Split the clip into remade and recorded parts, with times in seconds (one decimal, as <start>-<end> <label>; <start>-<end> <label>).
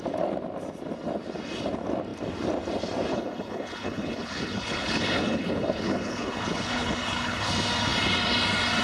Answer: 0.0-3.1 recorded; 3.1-7.5 remade; 7.5-8.8 recorded